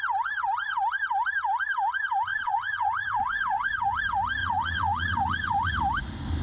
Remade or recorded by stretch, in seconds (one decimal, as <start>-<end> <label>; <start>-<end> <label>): 0.0-2.3 recorded; 2.3-4.0 remade; 4.0-4.4 recorded; 4.4-5.7 remade; 5.7-6.4 recorded